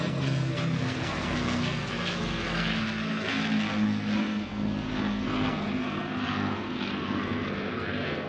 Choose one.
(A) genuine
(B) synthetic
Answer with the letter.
B